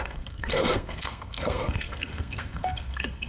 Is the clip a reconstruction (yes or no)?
yes